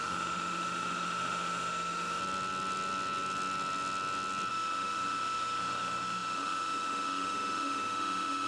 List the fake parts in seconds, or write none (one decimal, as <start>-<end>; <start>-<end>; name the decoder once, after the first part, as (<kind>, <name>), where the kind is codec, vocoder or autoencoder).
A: 0.0-2.2 (autoencoder, DAC-VAE); 4.5-8.5